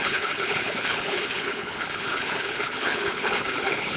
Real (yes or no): no